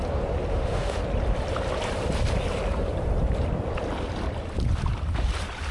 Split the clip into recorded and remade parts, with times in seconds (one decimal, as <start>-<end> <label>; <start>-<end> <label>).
0.0-0.5 recorded; 0.5-1.0 remade; 1.0-5.7 recorded